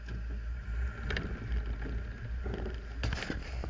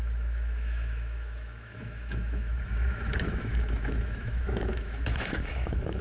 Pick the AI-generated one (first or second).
second